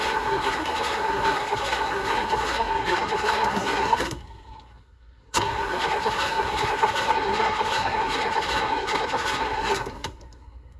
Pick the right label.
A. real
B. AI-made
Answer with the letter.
B